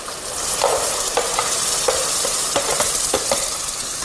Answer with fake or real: real